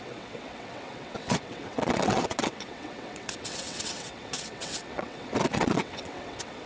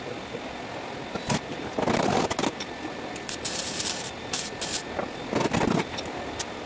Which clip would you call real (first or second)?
second